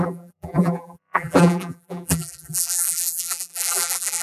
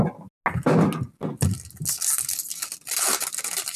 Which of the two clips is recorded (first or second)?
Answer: second